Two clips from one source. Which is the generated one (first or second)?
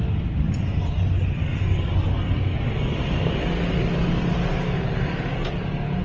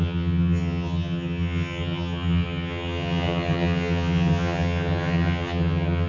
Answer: second